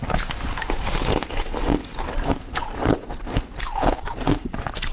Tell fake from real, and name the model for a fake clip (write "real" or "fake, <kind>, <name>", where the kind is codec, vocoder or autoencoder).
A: real